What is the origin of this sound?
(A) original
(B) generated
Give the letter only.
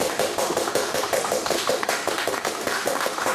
B